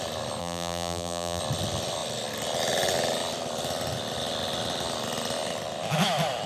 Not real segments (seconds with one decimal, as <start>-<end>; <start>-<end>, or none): 0.4-1.4